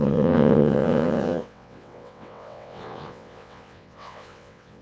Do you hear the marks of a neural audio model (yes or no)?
yes